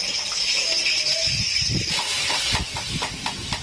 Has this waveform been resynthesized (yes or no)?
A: no